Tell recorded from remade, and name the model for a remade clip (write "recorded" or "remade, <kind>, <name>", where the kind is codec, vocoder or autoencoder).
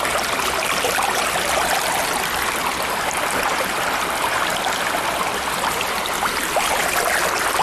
recorded